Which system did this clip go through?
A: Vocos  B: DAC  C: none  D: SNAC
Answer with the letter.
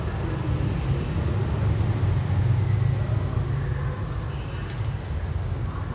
C